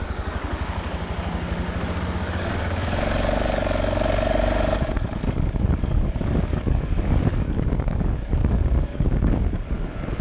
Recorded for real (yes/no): no